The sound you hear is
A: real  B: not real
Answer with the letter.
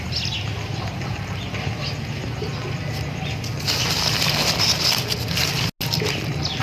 A